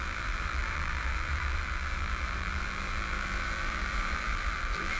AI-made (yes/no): yes